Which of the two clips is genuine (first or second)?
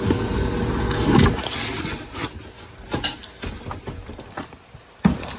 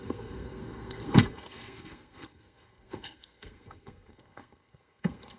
first